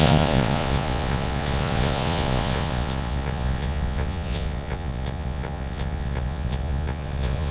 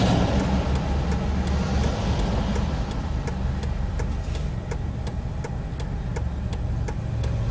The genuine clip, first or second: second